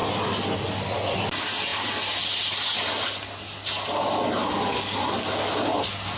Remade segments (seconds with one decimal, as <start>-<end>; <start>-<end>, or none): none